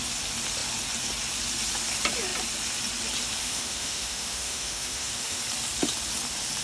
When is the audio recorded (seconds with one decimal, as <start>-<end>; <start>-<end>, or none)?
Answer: 0.0-3.4; 5.4-6.6

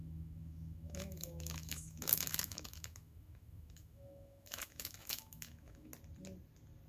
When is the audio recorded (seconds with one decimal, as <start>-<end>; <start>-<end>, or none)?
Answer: 5.9-6.9